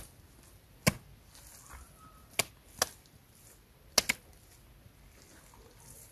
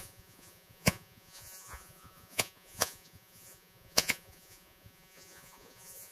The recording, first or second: first